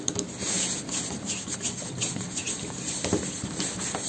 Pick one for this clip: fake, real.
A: real